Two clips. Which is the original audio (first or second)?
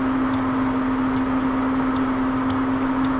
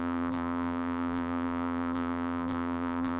first